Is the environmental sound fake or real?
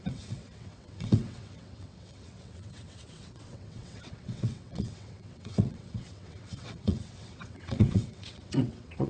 fake